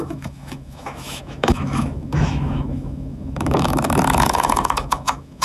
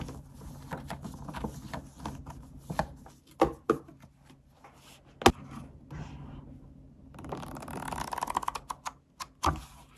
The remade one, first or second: first